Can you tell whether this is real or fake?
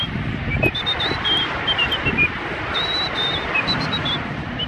real